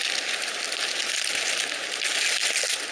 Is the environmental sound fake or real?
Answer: real